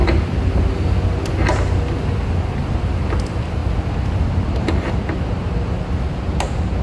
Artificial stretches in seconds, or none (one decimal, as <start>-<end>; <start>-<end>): none